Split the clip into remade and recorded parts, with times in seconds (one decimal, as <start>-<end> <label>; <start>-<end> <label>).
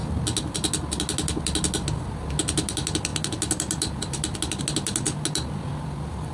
0.0-6.3 recorded